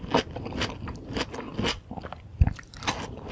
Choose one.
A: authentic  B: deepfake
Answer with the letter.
A